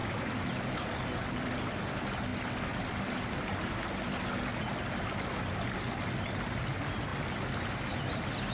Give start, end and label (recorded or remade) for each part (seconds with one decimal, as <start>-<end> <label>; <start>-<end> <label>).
0.0-8.5 recorded